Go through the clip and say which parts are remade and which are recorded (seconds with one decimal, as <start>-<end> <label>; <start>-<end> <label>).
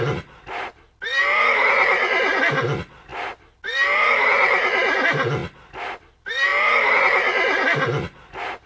0.0-8.7 recorded